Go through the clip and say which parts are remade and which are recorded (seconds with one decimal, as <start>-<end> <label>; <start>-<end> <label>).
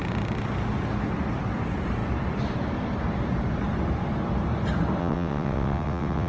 0.0-5.0 recorded; 5.0-6.3 remade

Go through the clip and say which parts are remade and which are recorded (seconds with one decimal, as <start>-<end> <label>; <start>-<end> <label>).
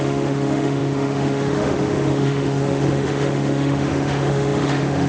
0.0-5.1 remade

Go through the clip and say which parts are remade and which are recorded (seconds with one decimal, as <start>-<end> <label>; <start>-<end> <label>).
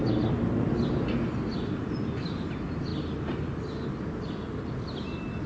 0.0-5.5 recorded